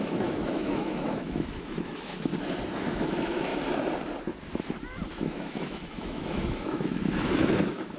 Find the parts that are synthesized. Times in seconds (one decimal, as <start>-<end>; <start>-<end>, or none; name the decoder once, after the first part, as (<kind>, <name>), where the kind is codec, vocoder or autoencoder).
0.0-2.3 (autoencoder, DAC-VAE); 2.8-3.5; 5.1-8.0